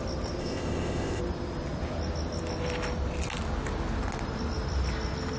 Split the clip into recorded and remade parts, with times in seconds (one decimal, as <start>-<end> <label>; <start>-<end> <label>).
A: 0.0-0.4 recorded; 0.4-1.2 remade; 1.2-5.4 recorded